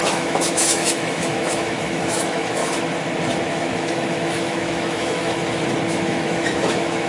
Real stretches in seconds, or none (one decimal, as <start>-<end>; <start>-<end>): 2.6-3.5; 5.4-5.9